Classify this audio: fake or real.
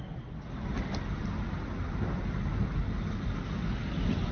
real